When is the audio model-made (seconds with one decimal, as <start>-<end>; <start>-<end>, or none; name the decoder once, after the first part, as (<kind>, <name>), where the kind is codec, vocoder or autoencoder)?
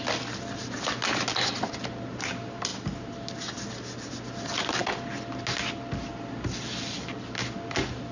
none